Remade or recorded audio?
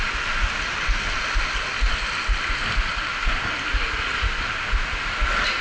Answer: recorded